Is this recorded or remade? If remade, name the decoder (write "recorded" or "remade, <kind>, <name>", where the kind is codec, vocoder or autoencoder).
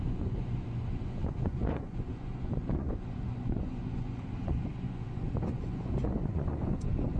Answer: remade, vocoder, Vocos